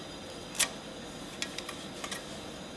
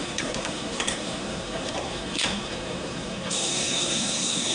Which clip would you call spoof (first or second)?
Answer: second